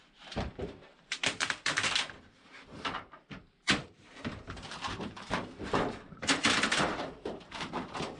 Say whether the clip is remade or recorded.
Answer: remade